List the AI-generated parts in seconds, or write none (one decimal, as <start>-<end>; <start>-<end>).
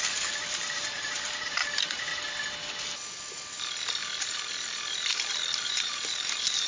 0.0-2.1; 5.6-6.7